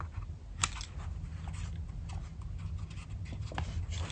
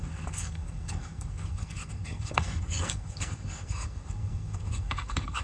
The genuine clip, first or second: first